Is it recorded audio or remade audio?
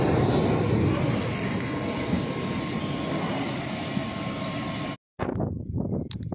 recorded